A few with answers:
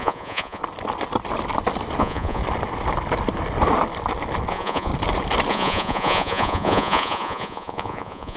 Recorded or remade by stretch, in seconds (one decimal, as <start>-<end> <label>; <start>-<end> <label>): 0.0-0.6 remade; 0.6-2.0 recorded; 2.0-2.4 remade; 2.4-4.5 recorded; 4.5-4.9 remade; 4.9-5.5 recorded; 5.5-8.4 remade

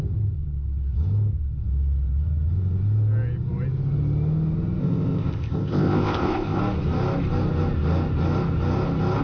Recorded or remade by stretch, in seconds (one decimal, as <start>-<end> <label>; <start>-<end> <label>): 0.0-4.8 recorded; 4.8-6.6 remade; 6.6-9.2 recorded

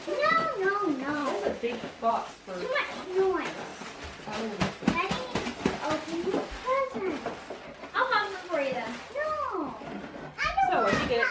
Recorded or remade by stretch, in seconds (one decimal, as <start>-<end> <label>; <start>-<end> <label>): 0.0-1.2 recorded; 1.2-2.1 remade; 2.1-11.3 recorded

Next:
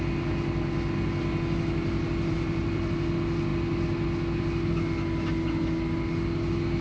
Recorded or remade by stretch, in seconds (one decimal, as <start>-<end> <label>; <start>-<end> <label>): 0.0-2.3 recorded; 2.3-3.0 remade; 3.0-6.8 recorded

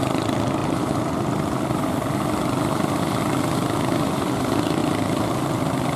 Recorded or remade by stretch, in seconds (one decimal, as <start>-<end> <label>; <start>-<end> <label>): 0.0-4.8 recorded; 4.8-5.5 remade; 5.5-6.0 recorded

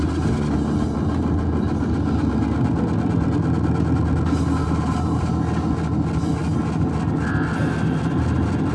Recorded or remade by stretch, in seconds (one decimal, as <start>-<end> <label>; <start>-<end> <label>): 0.0-4.6 recorded; 4.6-5.3 remade; 5.3-8.7 recorded